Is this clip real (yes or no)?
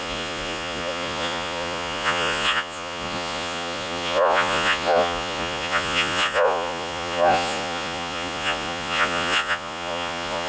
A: no